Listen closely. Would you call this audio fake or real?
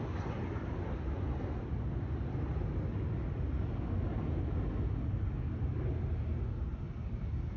real